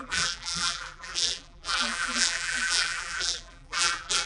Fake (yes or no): yes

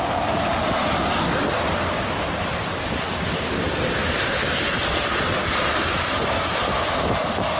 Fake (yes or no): no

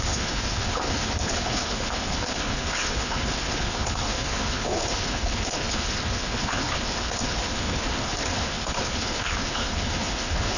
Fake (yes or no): yes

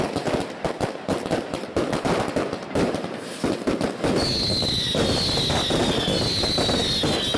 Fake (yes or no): no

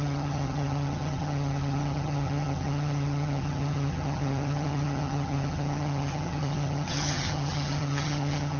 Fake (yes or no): yes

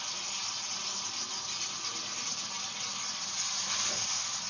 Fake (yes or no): no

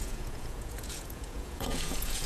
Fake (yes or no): yes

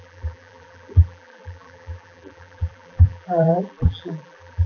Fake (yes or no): yes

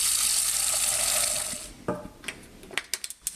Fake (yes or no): no